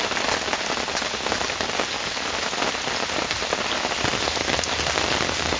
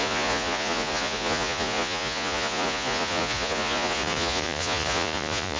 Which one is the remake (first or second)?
second